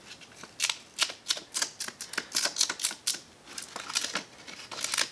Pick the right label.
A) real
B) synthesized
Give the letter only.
A